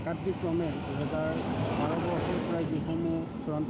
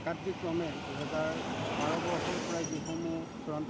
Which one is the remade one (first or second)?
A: first